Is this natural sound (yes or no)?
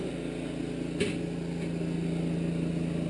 yes